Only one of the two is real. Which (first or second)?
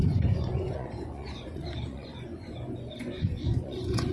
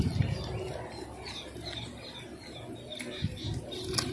second